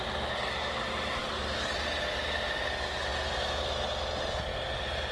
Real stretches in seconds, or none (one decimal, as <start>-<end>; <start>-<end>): 0.0-5.1